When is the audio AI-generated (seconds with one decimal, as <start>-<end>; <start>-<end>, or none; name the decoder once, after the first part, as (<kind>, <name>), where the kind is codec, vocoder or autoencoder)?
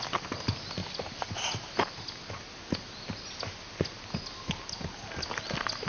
none